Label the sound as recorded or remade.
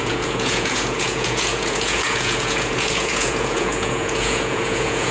remade